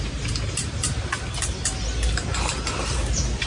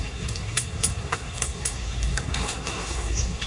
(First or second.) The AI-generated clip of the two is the second